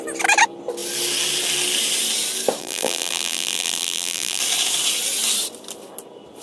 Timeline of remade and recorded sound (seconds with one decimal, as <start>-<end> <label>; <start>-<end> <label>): 0.0-2.6 recorded; 2.6-4.4 remade; 4.4-6.4 recorded